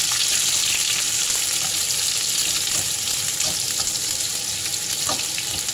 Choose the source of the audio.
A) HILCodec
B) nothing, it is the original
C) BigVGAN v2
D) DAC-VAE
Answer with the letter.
B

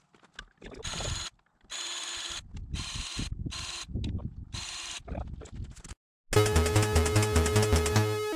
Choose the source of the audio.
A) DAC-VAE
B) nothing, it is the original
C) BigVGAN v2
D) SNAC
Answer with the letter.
B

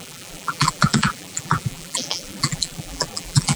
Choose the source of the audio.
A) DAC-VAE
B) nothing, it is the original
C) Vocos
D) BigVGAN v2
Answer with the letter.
D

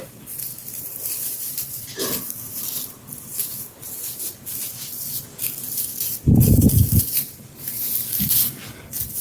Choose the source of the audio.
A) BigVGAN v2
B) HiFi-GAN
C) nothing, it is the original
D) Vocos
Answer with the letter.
C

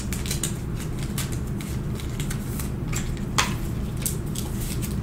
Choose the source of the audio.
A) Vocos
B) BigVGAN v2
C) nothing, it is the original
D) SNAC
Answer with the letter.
C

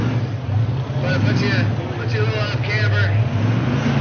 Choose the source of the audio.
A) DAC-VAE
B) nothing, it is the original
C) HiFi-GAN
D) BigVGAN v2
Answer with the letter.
B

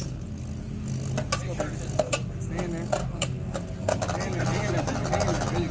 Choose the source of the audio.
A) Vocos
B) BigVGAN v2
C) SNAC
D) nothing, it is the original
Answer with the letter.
D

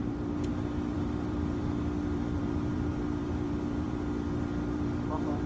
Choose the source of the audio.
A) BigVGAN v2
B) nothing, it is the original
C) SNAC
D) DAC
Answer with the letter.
A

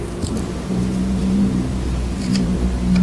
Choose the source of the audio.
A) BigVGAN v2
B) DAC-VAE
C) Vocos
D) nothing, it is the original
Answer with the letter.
A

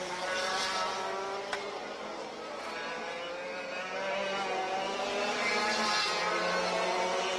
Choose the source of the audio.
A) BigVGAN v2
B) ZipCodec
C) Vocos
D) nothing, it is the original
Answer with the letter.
D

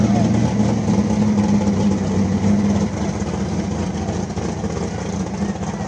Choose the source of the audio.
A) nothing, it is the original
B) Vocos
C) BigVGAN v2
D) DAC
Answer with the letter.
A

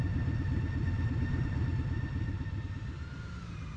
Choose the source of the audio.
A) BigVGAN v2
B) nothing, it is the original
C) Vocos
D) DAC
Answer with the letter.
A